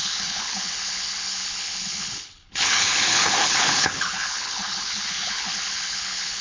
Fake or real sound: fake